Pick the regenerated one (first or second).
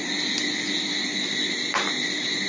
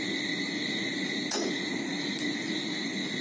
second